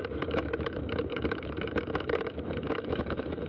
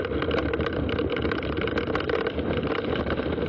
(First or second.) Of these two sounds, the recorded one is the second